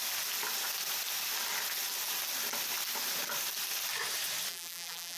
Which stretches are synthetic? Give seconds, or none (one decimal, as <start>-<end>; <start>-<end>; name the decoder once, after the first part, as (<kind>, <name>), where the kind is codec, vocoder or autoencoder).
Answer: 4.5-5.2 (vocoder, BigVGAN v2)